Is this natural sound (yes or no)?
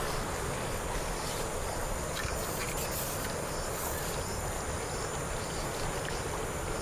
yes